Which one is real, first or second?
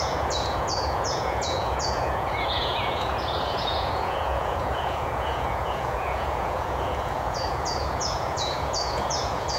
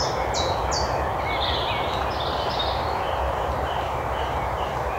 second